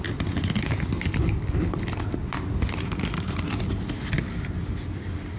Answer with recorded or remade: recorded